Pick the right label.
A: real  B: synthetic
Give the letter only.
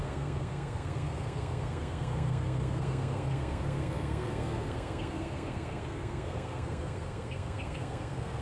B